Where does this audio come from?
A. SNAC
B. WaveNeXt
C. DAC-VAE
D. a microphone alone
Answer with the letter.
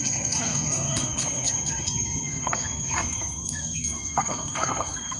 A